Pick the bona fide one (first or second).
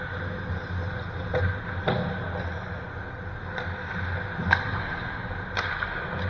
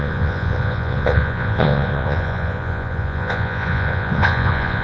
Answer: first